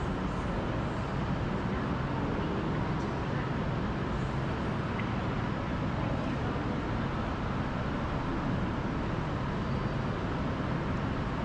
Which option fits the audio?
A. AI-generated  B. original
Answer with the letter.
B